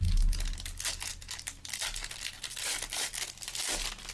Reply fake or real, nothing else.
real